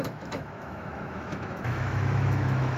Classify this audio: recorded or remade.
remade